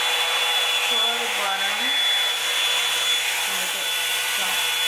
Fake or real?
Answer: real